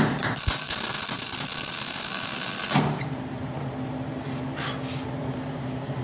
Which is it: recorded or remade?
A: recorded